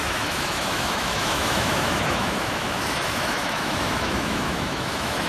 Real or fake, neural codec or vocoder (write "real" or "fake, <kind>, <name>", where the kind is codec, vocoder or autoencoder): fake, autoencoder, DAC-VAE